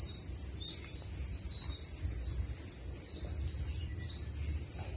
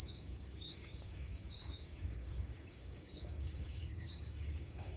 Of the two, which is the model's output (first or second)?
second